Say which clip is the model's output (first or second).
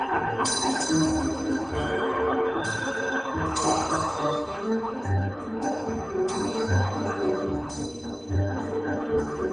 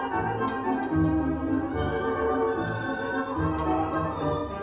first